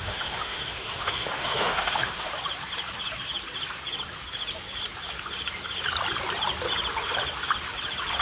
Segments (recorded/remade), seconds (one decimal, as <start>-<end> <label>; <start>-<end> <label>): 0.0-2.3 remade; 2.3-8.2 recorded